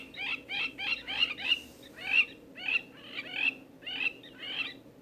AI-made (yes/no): no